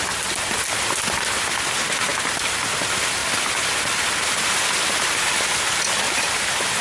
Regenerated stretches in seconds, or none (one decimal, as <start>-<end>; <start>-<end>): none